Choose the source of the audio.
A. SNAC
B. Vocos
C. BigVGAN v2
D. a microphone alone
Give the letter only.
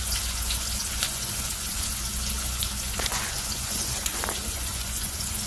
B